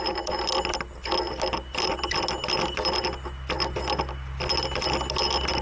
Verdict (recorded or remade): recorded